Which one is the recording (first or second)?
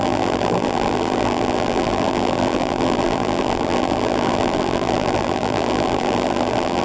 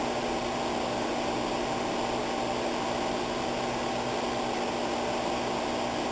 second